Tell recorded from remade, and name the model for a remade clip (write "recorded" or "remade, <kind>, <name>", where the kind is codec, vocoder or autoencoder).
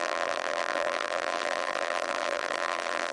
remade, vocoder, BigVGAN v2